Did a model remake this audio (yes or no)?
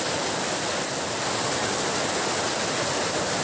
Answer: no